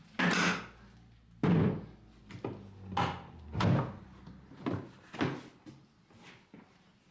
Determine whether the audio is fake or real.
real